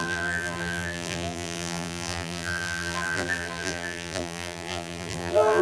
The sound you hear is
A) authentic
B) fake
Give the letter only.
B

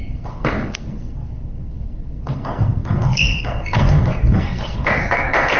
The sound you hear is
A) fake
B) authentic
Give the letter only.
A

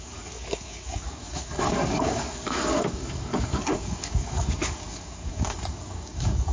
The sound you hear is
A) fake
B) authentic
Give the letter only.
A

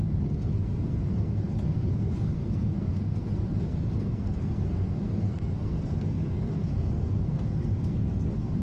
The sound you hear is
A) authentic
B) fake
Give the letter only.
B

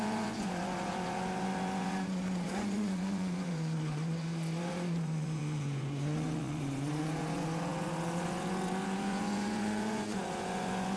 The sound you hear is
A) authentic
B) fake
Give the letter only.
B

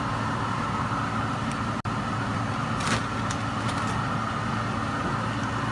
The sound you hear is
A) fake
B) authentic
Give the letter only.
B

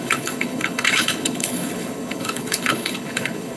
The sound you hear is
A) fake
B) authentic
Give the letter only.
A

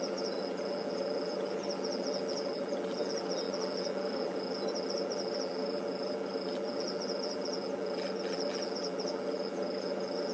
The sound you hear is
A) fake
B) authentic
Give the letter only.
A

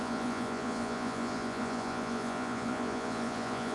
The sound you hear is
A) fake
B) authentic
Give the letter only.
A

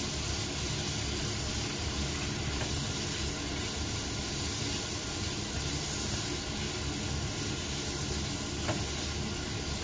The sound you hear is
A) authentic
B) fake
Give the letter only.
A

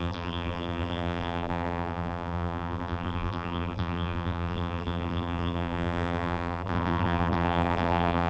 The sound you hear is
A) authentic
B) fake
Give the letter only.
B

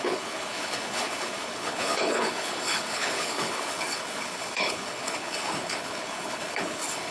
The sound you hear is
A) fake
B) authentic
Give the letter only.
A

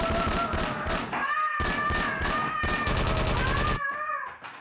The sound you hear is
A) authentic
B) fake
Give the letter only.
A